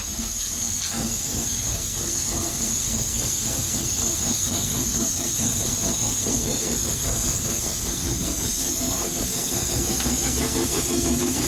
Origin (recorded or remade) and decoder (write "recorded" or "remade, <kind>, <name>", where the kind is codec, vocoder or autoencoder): remade, codec, SNAC